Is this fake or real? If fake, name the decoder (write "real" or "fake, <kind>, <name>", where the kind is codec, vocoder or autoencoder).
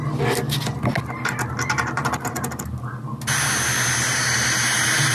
real